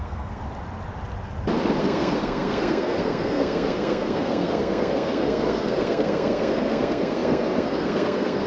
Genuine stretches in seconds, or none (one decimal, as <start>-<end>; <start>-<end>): 0.4-1.8